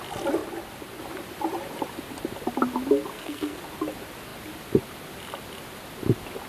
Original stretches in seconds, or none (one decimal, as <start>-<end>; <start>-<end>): 0.0-3.1; 3.6-6.5